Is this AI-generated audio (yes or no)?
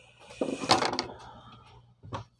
no